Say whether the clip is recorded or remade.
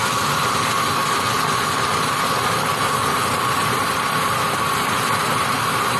recorded